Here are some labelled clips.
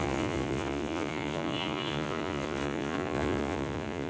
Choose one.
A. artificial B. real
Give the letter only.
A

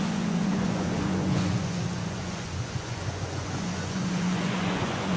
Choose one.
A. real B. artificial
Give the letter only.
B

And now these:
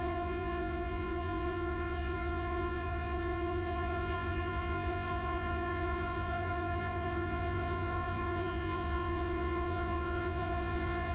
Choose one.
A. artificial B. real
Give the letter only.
A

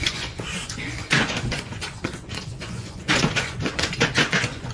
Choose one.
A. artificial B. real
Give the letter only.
A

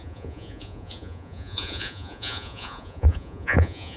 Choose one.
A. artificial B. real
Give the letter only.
A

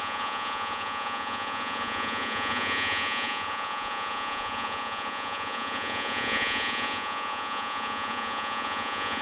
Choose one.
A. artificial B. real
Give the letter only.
A